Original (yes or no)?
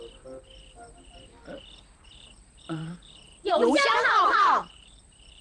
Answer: no